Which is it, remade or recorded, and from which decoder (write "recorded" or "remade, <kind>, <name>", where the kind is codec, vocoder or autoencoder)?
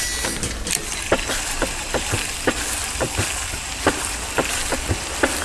recorded